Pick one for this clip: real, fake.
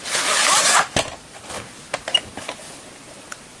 real